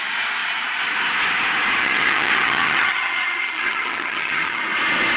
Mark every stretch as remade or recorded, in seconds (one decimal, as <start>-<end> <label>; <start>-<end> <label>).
0.0-1.8 recorded; 1.8-4.6 remade; 4.6-5.2 recorded